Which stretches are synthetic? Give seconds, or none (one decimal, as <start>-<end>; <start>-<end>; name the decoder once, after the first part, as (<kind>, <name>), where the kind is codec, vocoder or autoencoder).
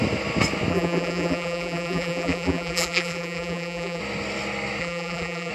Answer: 0.7-4.0 (vocoder, BigVGAN v2); 4.8-5.5